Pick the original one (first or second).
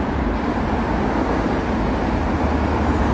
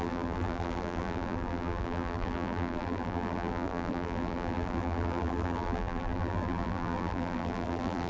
first